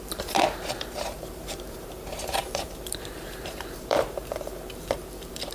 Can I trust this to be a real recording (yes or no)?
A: no